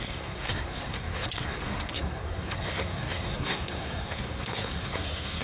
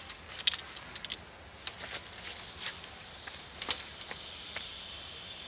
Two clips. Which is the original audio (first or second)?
second